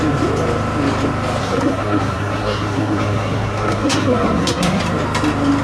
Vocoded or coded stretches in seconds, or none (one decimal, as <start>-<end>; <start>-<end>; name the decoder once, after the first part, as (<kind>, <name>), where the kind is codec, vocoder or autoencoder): 1.4-4.8 (codec, SNAC)